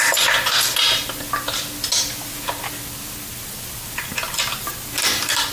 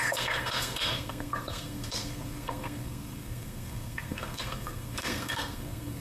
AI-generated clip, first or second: second